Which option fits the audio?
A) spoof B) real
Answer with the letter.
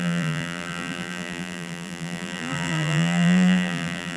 A